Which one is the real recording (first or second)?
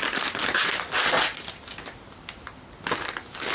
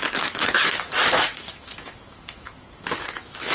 first